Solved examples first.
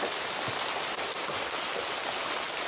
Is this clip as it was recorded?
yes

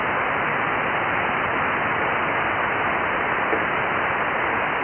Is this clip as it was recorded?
yes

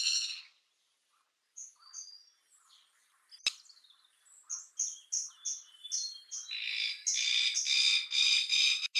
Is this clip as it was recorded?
yes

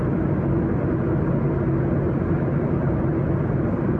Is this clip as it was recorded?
yes